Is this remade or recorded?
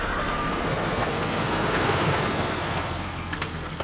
remade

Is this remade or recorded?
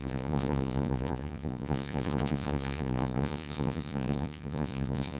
remade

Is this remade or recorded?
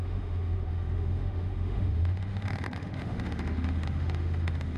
remade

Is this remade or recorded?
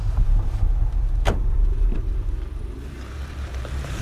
remade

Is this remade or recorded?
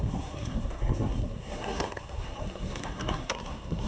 remade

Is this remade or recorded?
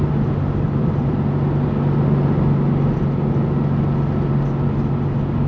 recorded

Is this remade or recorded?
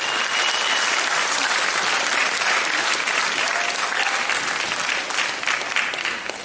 recorded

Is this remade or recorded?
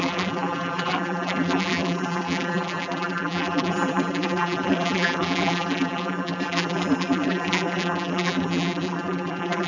remade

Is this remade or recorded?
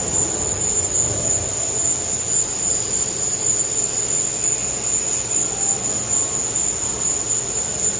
recorded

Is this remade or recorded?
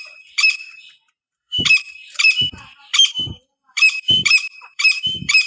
remade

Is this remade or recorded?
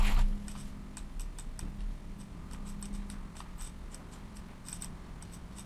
recorded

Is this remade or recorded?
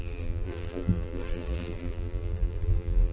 remade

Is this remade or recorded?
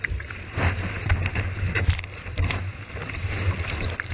remade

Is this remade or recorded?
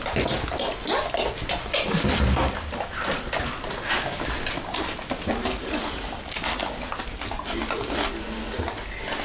recorded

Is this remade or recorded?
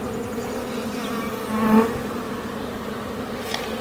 recorded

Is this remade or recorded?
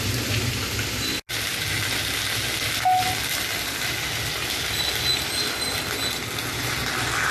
recorded